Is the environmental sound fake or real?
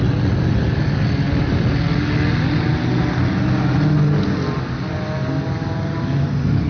real